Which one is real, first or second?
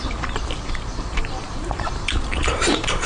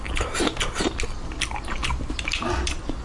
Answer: second